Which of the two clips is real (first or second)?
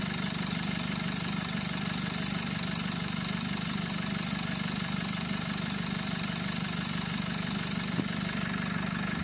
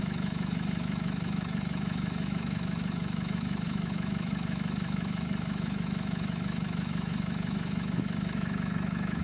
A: first